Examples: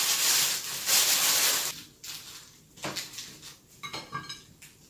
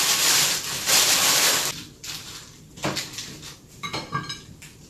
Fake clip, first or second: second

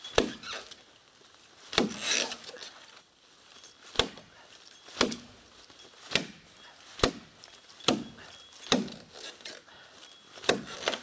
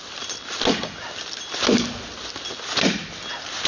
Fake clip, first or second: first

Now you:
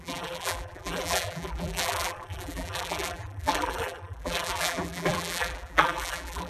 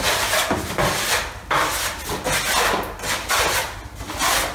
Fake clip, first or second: first